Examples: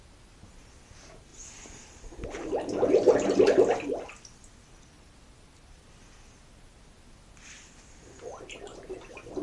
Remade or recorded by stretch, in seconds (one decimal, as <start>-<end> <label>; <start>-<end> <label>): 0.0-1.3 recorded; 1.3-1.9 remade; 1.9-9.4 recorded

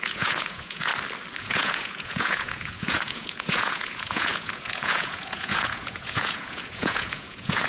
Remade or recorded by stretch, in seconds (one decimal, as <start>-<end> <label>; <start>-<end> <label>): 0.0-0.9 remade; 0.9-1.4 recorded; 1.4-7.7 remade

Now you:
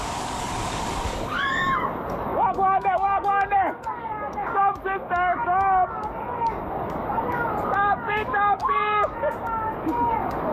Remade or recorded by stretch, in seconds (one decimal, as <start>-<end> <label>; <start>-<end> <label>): 0.0-10.5 remade

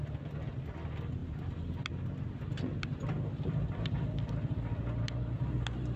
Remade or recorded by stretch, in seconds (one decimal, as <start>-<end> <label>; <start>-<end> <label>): 0.0-6.0 recorded